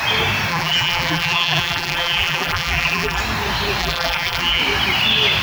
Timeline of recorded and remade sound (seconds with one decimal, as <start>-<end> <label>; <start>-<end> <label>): 0.0-0.5 recorded; 0.5-3.2 remade; 3.2-3.8 recorded; 3.8-4.6 remade; 4.6-5.4 recorded